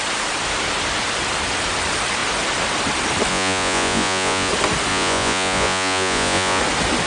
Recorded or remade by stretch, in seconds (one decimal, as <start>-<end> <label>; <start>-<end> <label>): 0.0-3.3 recorded; 3.3-4.5 remade; 4.5-4.9 recorded; 4.9-6.6 remade; 6.6-7.1 recorded